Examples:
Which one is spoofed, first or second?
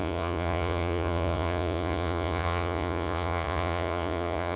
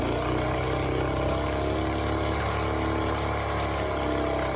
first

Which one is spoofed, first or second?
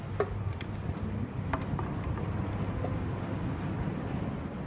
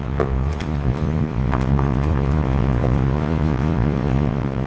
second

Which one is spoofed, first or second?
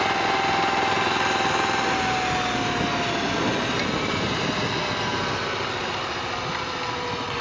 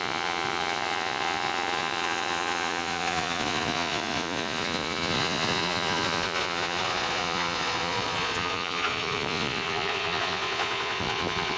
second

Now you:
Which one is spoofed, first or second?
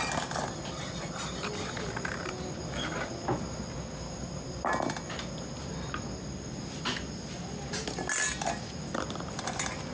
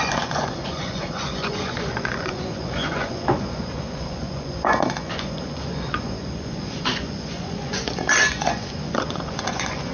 second